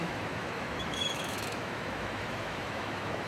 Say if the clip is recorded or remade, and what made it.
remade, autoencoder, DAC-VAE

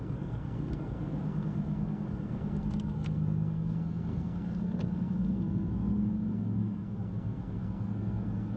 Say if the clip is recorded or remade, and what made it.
remade, codec, SNAC